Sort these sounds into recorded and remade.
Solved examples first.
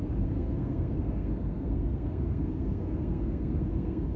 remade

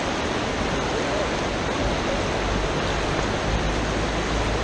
recorded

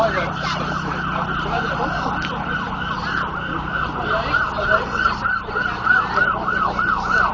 recorded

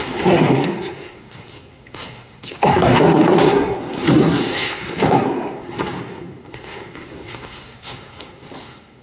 remade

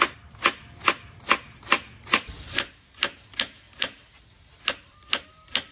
recorded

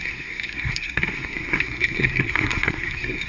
remade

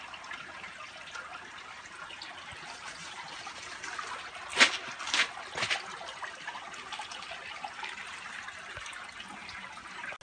recorded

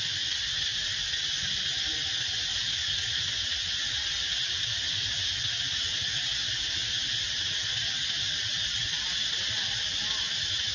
recorded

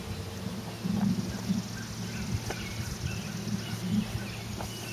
recorded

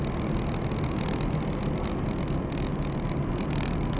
recorded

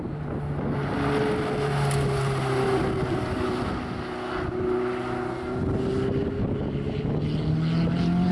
recorded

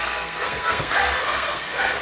remade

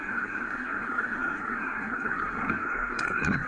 remade